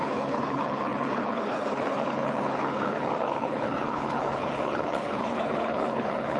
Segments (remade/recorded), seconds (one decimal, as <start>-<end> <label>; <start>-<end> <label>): 0.0-6.4 remade